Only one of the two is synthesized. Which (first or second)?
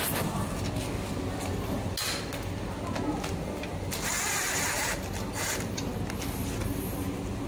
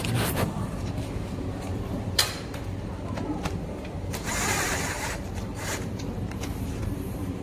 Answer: second